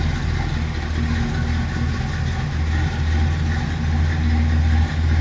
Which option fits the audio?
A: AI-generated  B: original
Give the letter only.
B